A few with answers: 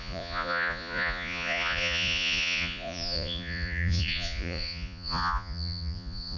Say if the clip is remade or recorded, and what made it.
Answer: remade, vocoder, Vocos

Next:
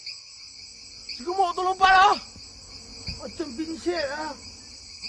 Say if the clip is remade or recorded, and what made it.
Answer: recorded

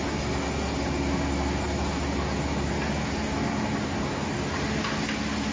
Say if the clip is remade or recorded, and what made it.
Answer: recorded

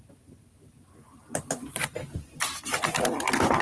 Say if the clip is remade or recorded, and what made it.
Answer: recorded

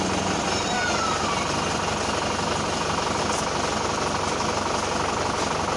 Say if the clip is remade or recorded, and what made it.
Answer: recorded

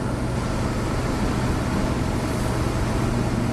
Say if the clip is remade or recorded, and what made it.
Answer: recorded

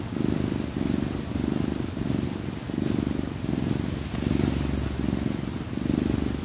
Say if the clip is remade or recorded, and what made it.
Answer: recorded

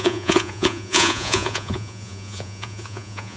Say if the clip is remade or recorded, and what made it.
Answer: remade, vocoder, Vocos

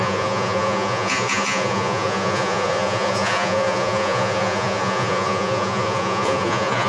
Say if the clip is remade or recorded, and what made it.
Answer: remade, vocoder, Vocos